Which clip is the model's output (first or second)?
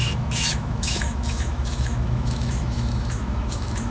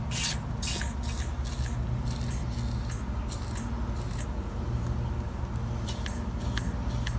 first